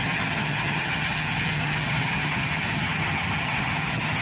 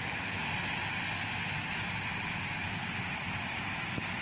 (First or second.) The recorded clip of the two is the second